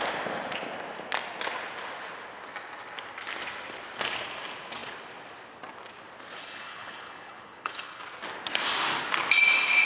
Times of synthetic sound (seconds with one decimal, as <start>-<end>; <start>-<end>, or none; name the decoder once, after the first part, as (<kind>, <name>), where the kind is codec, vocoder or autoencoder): 6.4-8.0 (codec, HILCodec)